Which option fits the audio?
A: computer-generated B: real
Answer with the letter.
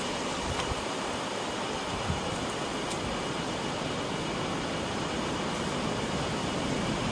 B